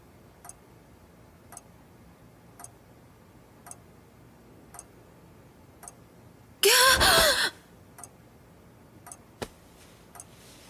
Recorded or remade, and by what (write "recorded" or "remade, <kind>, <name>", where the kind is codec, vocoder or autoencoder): recorded